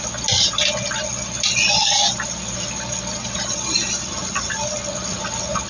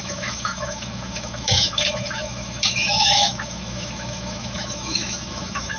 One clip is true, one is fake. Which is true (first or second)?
first